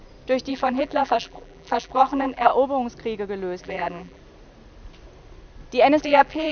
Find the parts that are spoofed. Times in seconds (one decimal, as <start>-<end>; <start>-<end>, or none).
0.5-2.5; 3.6-4.2; 6.0-6.5